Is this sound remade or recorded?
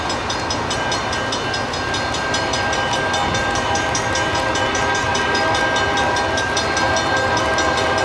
recorded